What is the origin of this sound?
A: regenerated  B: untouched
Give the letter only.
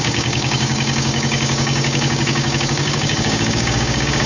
A